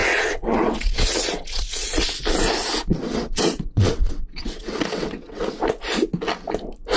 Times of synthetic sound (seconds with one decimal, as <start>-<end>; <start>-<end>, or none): 0.0-2.2; 2.9-5.4